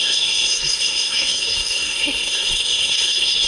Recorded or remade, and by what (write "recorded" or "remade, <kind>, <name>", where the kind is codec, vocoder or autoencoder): remade, codec, SNAC